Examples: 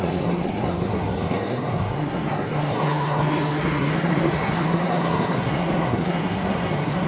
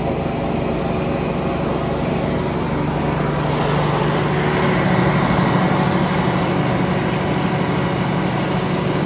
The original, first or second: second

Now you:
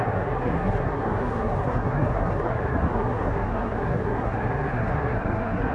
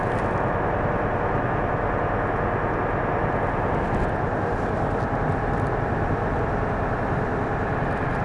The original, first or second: second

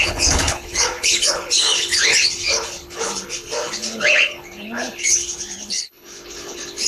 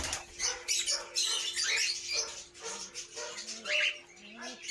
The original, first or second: second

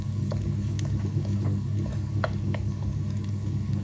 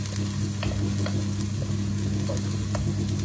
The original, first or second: second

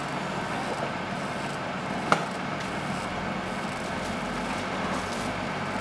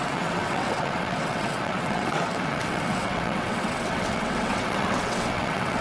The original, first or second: first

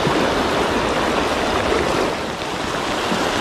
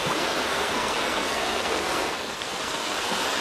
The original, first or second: first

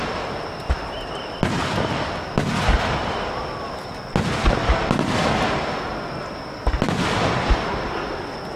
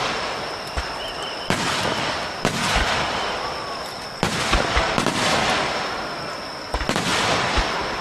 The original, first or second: first